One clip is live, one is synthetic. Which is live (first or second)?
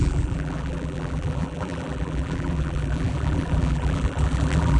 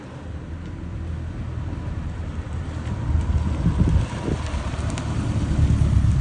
second